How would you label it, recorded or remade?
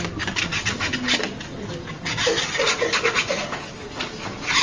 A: recorded